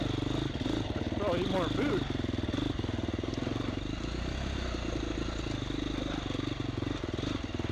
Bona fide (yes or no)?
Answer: yes